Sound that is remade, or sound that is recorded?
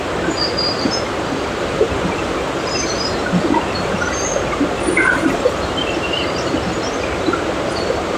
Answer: remade